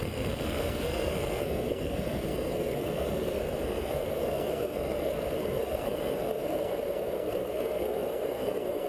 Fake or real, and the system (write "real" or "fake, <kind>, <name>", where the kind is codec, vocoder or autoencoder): fake, codec, SNAC